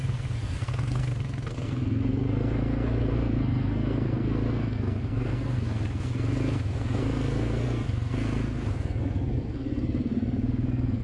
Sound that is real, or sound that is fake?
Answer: fake